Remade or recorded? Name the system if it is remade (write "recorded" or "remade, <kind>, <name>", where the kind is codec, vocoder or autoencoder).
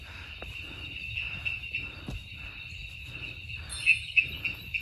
recorded